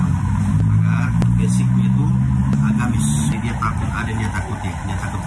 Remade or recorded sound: recorded